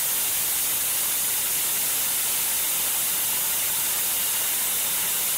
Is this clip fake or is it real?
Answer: real